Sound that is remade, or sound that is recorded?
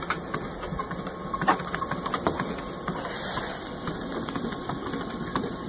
recorded